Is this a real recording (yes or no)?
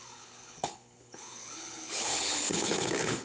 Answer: no